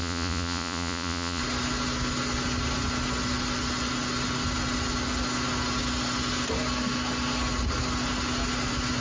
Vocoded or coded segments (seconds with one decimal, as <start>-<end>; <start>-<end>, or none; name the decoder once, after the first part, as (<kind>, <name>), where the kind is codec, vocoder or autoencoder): 0.0-1.4 (vocoder, Vocos)